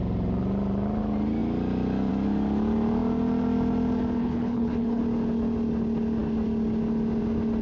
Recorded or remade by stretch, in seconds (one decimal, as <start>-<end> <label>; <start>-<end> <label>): 0.0-4.2 recorded; 4.2-5.0 remade; 5.0-7.6 recorded